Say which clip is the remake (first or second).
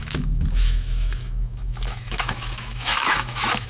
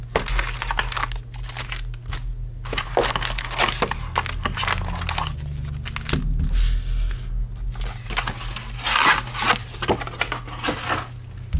first